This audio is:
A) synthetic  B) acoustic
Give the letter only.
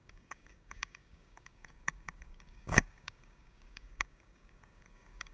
A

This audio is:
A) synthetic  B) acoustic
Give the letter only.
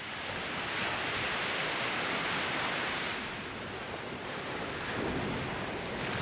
B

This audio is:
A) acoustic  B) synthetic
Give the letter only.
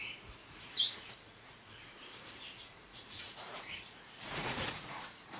B